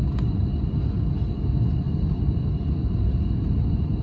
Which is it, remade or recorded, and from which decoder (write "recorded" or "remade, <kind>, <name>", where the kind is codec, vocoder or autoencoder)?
recorded